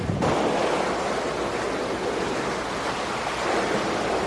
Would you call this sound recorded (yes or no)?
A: yes